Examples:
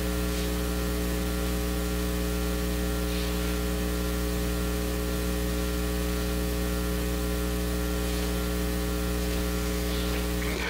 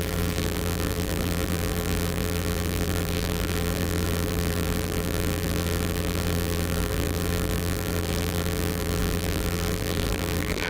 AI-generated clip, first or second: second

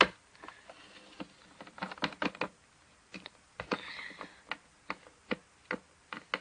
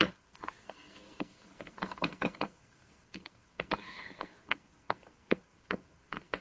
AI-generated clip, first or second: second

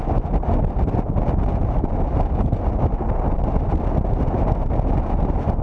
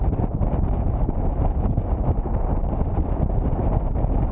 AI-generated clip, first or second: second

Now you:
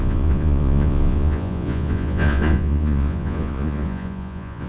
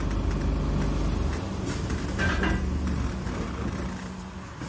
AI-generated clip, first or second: first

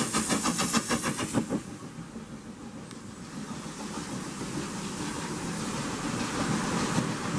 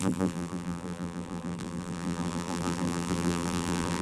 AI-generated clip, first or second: second